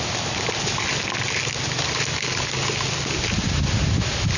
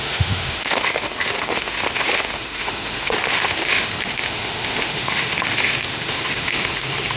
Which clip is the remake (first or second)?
second